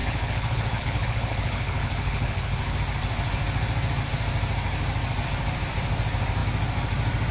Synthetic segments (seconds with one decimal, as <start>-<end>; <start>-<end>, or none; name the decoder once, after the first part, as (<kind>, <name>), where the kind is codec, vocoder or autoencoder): 0.0-2.8 (codec, HILCodec)